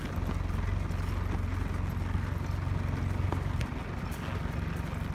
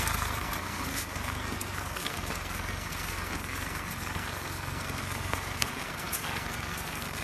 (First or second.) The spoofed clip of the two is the second